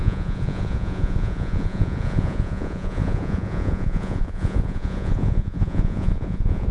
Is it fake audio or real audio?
fake